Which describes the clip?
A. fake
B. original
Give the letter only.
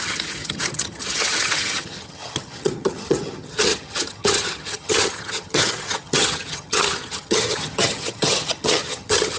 A